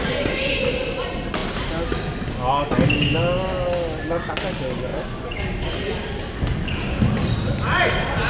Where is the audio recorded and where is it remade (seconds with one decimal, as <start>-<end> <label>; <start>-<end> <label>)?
0.0-4.9 recorded; 4.9-5.4 remade; 5.4-8.3 recorded